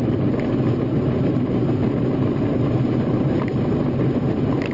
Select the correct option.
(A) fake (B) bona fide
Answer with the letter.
B